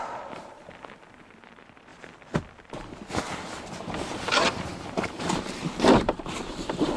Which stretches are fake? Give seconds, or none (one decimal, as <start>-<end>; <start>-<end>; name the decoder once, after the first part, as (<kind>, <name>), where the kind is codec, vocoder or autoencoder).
0.0-1.9 (vocoder, BigVGAN v2); 3.2-7.0